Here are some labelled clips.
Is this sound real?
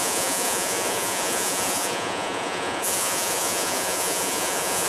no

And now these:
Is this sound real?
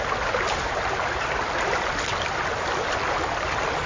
yes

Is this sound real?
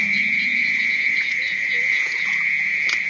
no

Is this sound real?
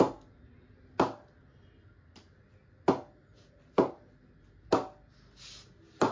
yes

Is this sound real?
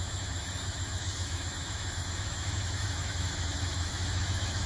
no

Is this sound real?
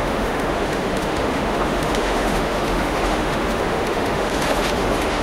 no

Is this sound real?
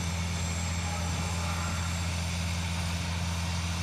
yes